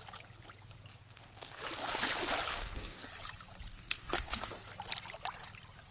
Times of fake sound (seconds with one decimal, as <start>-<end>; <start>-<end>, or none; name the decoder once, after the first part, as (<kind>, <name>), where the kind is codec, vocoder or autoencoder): 1.0-1.6 (codec, SNAC); 2.5-3.0; 3.7-4.6